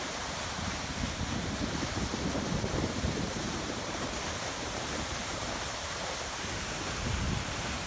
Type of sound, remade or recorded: remade